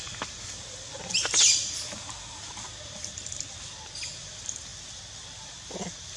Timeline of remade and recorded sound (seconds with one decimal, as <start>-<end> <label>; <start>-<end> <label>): 0.0-6.2 recorded